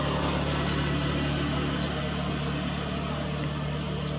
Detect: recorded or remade recorded